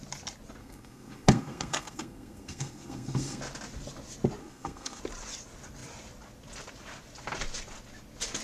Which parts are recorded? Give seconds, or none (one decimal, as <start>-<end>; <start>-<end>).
0.0-0.6; 3.4-4.4; 5.0-8.4